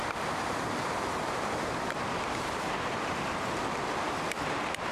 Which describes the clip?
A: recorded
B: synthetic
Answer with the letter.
A